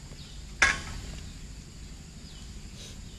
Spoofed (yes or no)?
no